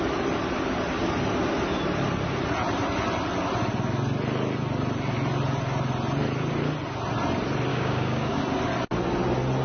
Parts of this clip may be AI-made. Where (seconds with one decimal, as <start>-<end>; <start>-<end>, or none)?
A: 7.7-8.4